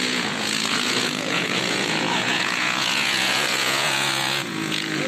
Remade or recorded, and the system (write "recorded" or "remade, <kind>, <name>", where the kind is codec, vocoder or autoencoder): remade, vocoder, Vocos